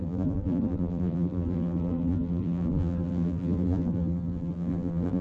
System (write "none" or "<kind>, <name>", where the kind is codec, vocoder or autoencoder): vocoder, BigVGAN v2